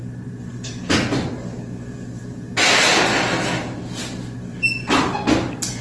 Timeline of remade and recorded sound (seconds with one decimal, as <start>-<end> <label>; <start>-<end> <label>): 0.0-5.8 recorded